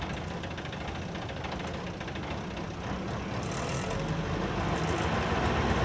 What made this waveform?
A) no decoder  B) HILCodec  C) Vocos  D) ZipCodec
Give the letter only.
A